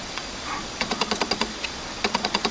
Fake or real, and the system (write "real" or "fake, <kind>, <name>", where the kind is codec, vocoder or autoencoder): fake, vocoder, Vocos